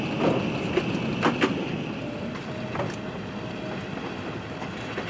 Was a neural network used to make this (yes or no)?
no